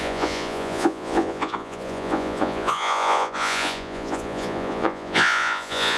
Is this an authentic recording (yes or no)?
no